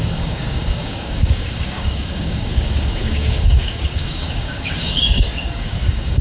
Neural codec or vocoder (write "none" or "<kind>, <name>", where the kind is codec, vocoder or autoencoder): codec, DAC